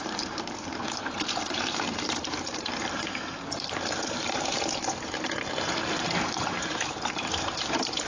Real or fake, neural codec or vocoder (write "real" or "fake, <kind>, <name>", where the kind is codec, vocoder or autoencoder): fake, vocoder, BigVGAN v2